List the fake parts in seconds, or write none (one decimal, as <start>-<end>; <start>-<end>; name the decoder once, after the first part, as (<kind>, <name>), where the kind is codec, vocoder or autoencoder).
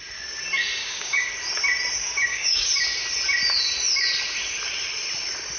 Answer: 0.8-1.3 (codec, DAC); 2.0-2.7